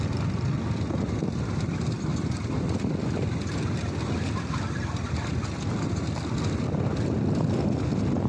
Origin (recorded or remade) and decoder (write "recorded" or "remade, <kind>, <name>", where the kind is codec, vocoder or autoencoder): recorded